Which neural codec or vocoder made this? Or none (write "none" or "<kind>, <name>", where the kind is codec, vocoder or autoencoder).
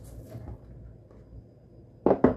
none